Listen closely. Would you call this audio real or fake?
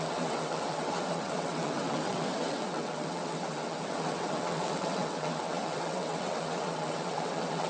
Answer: fake